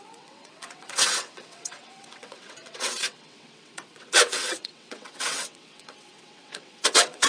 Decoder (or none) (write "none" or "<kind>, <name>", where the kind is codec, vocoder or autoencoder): vocoder, WaveNeXt